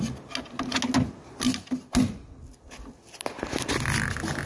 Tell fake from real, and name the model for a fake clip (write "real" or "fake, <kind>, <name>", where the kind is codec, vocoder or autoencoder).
real